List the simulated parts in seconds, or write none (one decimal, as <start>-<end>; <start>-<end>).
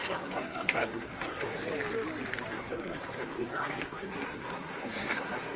0.0-1.6; 2.5-5.6